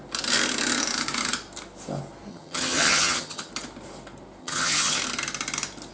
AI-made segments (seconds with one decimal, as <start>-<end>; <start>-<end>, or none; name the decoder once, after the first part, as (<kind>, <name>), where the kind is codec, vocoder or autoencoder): 2.3-3.5 (vocoder, HiFi-GAN); 4.4-5.0